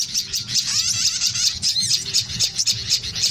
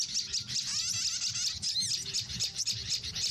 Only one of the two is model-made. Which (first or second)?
first